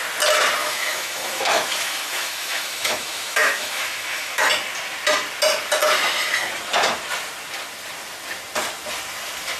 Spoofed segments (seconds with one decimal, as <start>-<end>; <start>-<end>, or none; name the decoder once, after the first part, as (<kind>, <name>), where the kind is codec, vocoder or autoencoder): 0.6-4.5 (autoencoder, DAC-VAE)